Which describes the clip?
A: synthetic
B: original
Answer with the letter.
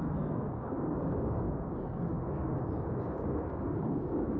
A